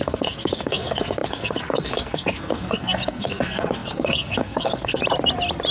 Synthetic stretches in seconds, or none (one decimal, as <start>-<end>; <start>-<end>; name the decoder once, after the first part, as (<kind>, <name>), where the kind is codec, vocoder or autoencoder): 0.0-5.0 (codec, SNAC)